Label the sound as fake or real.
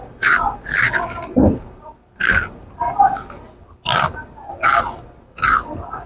real